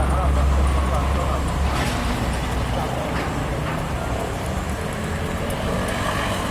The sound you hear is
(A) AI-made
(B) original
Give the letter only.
B